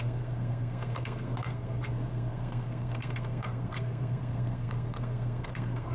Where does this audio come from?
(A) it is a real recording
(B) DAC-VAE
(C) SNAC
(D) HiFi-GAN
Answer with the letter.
C